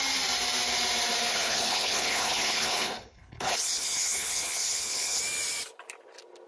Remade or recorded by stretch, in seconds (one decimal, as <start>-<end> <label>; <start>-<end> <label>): 0.0-1.3 recorded; 1.3-5.2 remade; 5.2-6.5 recorded